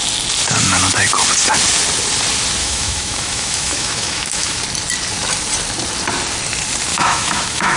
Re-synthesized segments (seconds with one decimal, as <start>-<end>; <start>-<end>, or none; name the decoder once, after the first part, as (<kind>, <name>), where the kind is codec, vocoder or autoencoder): 2.6-4.6 (autoencoder, DAC-VAE); 6.9-7.8